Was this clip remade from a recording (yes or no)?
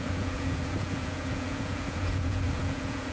yes